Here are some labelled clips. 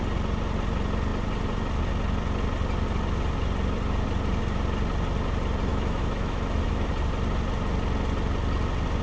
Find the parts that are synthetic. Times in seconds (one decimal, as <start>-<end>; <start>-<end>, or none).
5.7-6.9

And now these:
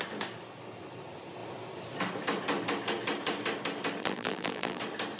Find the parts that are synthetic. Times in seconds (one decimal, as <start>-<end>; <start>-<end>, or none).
4.0-4.8

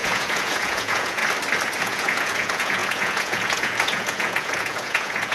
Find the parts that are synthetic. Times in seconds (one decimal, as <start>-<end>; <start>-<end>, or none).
0.0-1.2; 1.8-5.3